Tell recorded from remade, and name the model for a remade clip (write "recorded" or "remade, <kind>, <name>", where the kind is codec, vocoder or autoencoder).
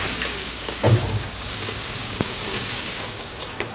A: remade, codec, DAC